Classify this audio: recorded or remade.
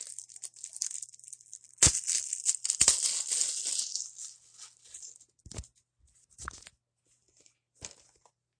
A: recorded